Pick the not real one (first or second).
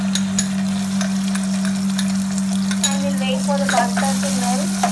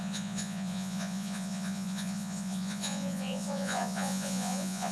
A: second